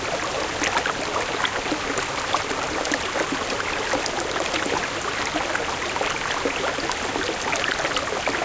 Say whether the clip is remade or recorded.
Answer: recorded